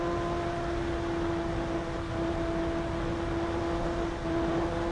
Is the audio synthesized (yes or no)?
no